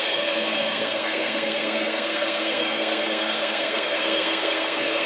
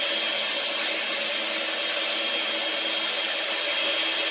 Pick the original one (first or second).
second